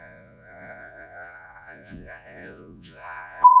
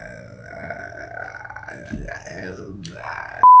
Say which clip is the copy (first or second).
first